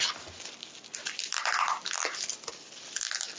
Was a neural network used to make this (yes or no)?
no